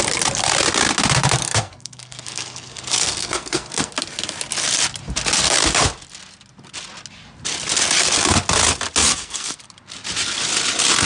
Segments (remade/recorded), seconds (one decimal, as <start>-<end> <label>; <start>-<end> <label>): 0.0-1.4 recorded; 1.4-3.9 remade; 3.9-9.1 recorded; 9.1-9.6 remade; 9.6-11.0 recorded